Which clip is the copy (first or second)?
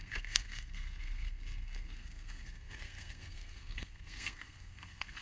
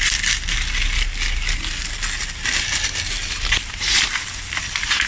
first